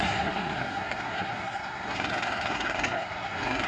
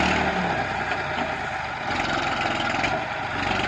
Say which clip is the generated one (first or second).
first